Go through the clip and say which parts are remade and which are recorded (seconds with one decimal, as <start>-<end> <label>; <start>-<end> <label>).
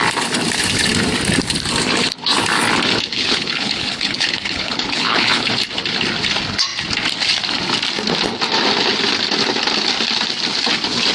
0.0-3.1 recorded; 3.1-5.5 remade; 5.5-11.1 recorded